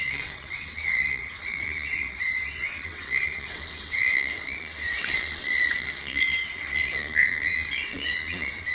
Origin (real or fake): fake